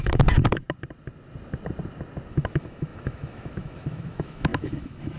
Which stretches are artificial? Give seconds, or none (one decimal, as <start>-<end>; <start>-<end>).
0.0-0.6; 2.3-5.2